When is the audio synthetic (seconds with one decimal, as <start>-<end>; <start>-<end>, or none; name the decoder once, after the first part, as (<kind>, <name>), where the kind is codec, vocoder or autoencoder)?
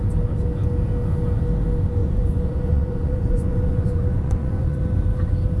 2.0-4.8 (vocoder, Vocos)